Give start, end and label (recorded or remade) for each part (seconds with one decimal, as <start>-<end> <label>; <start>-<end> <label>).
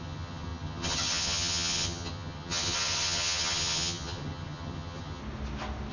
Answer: 0.0-5.2 remade; 5.2-5.9 recorded